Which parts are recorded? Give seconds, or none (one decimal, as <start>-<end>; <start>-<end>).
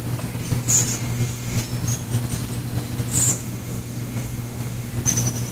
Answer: 0.0-0.9; 1.6-3.3; 4.9-5.5